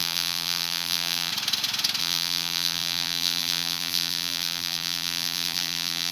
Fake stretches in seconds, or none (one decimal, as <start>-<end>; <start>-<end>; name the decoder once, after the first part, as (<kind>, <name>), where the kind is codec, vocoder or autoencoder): 0.0-1.3 (vocoder, BigVGAN v2); 2.0-6.1